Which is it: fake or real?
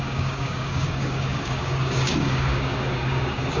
fake